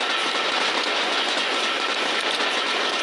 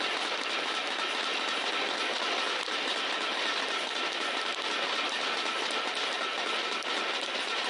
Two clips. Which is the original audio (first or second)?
second